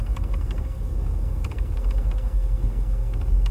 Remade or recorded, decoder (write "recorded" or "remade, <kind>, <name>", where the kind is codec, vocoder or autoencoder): remade, codec, SNAC